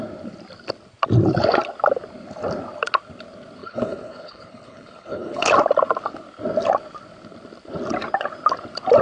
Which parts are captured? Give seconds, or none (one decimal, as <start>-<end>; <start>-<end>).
0.0-3.6; 5.5-9.0